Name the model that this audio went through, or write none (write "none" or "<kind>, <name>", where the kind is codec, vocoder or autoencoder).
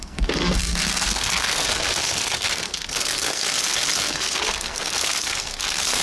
codec, SNAC